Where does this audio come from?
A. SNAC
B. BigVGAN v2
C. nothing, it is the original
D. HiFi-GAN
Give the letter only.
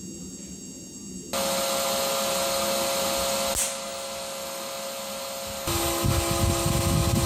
C